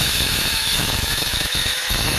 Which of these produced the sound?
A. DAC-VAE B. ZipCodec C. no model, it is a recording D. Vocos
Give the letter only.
A